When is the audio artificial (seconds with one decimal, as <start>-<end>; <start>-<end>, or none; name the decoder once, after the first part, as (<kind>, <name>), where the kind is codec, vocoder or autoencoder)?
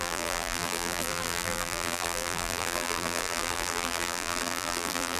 0.0-5.2 (vocoder, BigVGAN v2)